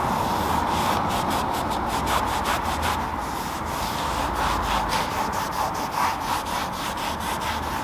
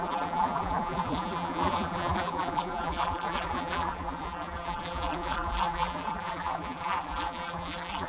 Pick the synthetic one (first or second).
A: second